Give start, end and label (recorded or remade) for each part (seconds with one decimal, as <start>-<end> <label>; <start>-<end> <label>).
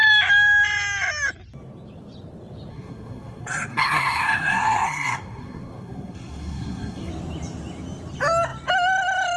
0.0-2.7 recorded; 2.7-7.1 remade; 7.1-9.4 recorded